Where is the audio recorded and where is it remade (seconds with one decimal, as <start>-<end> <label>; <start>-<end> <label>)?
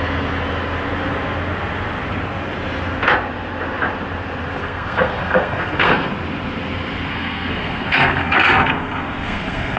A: 0.0-4.6 recorded; 4.6-6.1 remade; 6.1-7.1 recorded; 7.1-9.8 remade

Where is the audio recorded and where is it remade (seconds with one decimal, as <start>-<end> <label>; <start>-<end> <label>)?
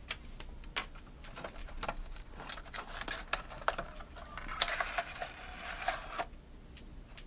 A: 0.0-7.3 recorded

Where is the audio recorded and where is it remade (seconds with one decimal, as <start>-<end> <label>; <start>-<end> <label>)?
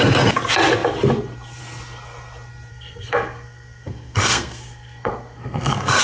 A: 0.0-2.7 recorded; 2.7-6.0 remade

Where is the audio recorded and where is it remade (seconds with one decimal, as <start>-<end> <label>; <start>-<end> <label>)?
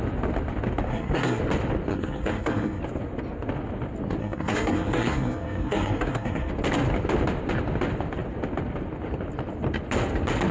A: 0.0-0.9 recorded; 0.9-1.4 remade; 1.4-1.9 recorded; 1.9-2.8 remade; 2.8-4.2 recorded; 4.2-6.5 remade; 6.5-10.5 recorded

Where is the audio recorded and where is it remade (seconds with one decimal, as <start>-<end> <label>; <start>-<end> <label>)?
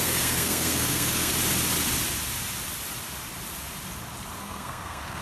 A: 0.0-1.3 remade; 1.3-4.4 recorded; 4.4-5.2 remade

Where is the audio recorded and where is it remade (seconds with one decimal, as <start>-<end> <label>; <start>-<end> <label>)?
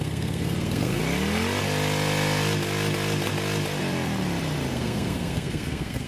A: 0.0-1.0 remade; 1.0-4.7 recorded; 4.7-6.1 remade